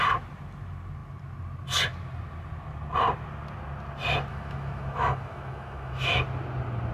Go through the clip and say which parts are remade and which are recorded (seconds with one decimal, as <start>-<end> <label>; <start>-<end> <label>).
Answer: 0.0-4.3 recorded; 4.3-6.2 remade; 6.2-6.9 recorded